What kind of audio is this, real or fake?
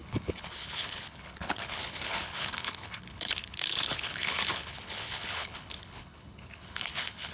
fake